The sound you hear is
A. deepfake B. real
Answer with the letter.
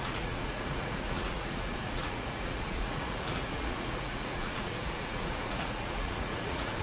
A